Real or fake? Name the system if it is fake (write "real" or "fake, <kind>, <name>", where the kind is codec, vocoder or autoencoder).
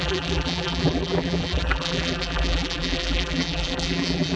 fake, vocoder, BigVGAN v2